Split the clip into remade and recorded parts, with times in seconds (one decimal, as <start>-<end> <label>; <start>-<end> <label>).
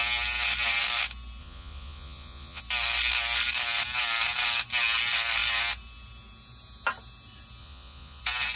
0.0-1.4 recorded; 1.4-2.6 remade; 2.6-7.6 recorded; 7.6-8.2 remade; 8.2-8.6 recorded